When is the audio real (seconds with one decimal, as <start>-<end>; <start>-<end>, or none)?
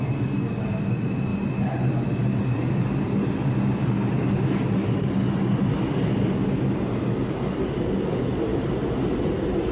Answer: 0.0-9.7